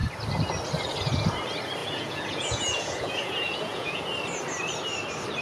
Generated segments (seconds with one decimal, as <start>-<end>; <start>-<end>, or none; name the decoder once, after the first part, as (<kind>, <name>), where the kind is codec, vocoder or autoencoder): 1.8-4.0 (vocoder, Vocos)